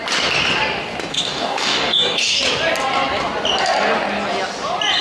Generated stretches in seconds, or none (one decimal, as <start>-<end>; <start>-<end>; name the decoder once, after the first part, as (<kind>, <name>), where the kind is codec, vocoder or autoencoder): 1.1-2.4 (codec, DAC)